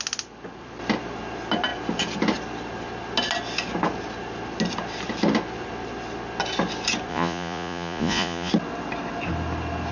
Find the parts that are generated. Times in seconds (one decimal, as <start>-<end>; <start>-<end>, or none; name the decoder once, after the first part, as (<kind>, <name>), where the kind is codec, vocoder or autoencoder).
7.1-8.5 (vocoder, Vocos)